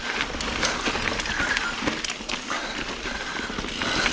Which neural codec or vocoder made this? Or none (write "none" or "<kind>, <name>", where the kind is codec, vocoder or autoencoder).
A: none